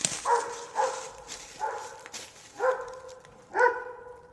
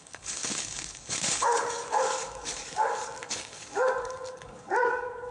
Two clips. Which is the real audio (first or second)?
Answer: first